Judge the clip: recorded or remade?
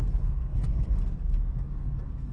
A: remade